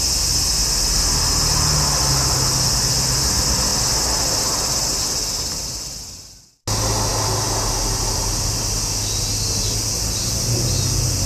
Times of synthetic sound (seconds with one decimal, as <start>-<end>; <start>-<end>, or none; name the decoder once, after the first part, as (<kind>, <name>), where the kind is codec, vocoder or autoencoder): none